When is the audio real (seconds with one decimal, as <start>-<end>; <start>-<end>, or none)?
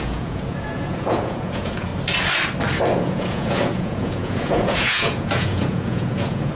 1.9-3.0